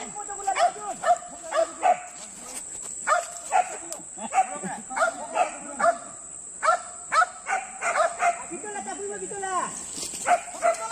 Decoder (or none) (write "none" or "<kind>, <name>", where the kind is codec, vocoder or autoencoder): none